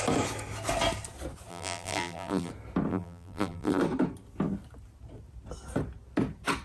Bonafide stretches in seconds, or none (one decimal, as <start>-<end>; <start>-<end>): 0.0-1.5; 2.5-2.9; 3.8-6.6